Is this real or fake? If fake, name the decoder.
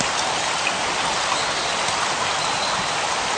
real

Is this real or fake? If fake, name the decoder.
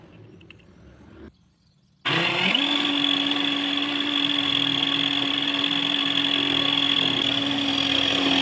real